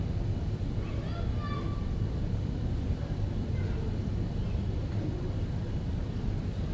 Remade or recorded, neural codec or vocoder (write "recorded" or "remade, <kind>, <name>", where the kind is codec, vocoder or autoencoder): recorded